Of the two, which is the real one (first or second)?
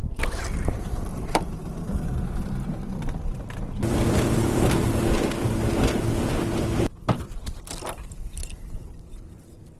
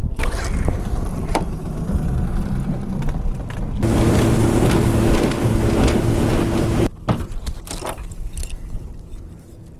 second